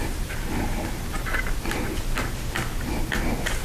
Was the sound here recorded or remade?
recorded